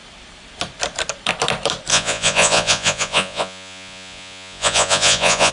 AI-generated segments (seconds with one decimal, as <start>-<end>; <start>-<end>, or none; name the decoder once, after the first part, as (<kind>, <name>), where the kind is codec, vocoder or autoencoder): 1.9-5.5 (vocoder, Vocos)